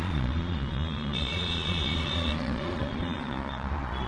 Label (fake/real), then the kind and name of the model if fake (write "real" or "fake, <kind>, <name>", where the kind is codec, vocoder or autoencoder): fake, vocoder, Vocos